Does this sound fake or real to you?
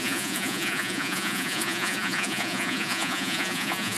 fake